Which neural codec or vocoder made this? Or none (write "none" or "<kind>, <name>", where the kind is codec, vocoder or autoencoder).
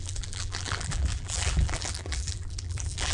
vocoder, BigVGAN v2